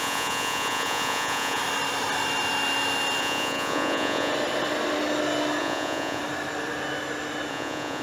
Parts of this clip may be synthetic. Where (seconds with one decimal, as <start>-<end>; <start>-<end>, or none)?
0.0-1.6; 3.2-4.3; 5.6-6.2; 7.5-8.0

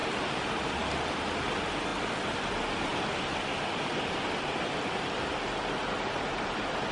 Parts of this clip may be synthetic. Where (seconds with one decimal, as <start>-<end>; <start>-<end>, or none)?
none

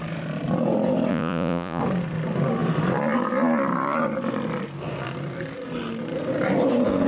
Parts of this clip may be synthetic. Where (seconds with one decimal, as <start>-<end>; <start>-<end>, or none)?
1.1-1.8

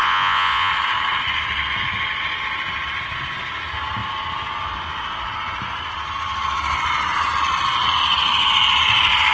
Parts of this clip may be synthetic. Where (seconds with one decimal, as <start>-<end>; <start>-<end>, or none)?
0.0-0.7